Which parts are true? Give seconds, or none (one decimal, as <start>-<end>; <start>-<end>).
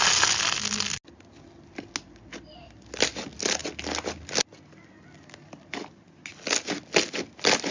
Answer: 0.0-7.7